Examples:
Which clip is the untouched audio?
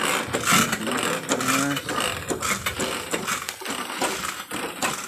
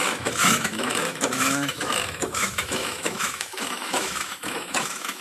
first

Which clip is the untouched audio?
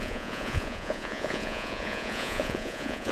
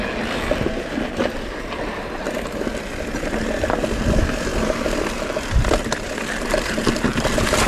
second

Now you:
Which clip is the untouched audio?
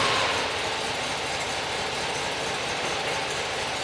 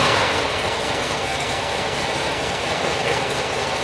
first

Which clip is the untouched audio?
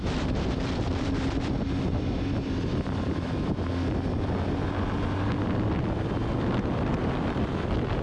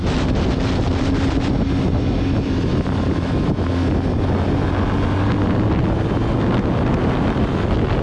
second